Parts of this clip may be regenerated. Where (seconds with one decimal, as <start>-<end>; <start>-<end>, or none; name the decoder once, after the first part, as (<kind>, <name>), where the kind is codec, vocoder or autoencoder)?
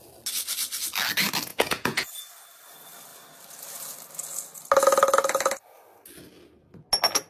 1.5-2.1 (vocoder, Vocos)